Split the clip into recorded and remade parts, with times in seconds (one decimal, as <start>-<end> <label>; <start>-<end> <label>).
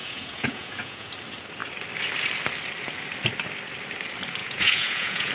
0.0-1.1 remade; 1.1-4.4 recorded; 4.4-5.3 remade